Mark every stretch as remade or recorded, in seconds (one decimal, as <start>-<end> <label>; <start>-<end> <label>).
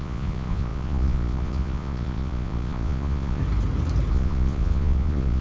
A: 0.0-3.4 remade; 3.4-4.1 recorded; 4.1-5.4 remade